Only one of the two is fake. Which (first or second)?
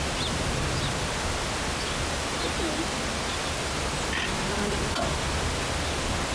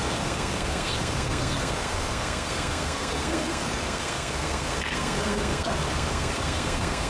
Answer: second